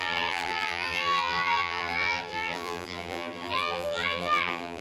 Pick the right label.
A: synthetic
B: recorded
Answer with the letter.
A